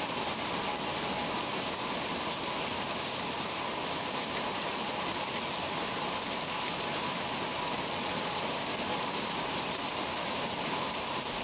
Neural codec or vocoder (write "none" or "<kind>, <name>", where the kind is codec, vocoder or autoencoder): none